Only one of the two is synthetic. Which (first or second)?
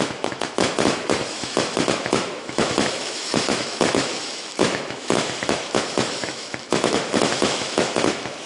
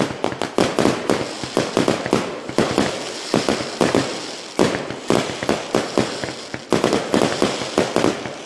first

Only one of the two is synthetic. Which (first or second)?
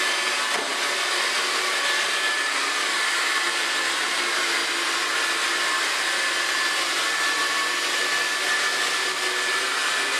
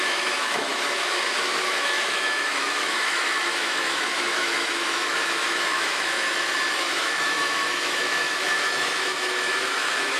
second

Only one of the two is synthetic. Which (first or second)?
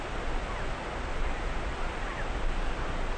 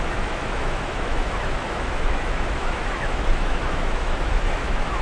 second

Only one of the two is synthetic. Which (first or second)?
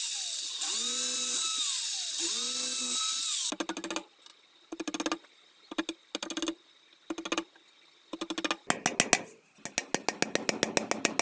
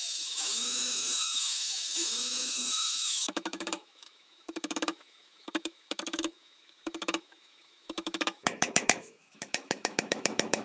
second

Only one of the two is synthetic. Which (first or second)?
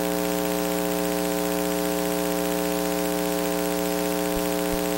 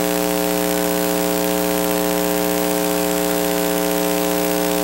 second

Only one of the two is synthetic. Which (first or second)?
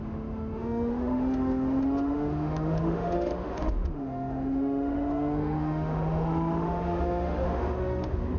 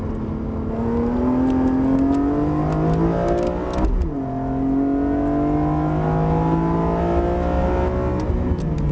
first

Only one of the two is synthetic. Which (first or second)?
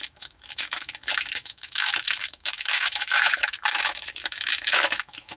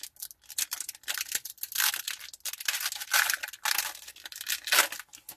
first